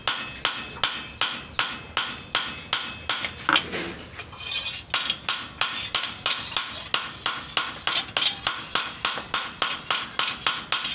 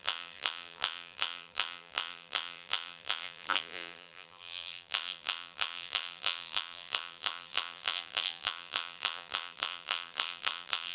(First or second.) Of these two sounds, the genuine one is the first